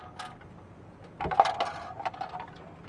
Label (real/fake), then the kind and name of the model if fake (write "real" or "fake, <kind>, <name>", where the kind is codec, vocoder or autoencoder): real